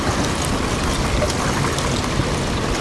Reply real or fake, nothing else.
real